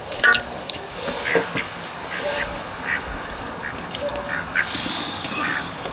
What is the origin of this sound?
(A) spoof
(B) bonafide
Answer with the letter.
A